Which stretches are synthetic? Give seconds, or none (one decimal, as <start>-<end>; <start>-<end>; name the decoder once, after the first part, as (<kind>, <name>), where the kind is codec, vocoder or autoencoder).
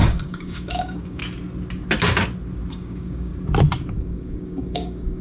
0.0-1.2 (codec, DAC); 2.7-3.3; 4.0-5.2